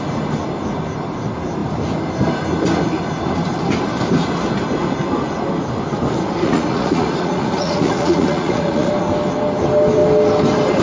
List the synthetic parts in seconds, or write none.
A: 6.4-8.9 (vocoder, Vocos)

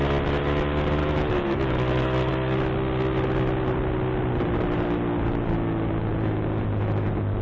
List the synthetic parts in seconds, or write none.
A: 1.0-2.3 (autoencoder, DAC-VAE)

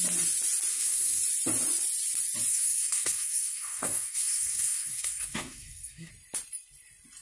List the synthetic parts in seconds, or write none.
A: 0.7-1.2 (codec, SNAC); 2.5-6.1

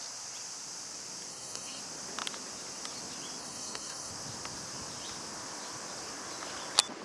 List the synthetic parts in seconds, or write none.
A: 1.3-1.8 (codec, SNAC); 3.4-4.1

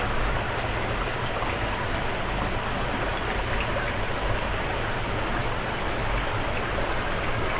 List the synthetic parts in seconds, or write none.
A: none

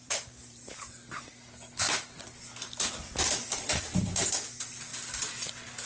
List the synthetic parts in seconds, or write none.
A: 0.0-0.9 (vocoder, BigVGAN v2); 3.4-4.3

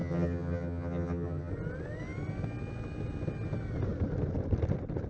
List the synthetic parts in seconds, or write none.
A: 0.0-1.5 (vocoder, HiFi-GAN)

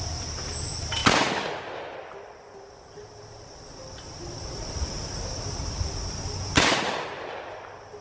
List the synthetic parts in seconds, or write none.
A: none